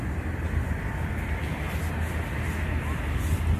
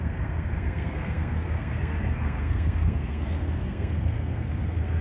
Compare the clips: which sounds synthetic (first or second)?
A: second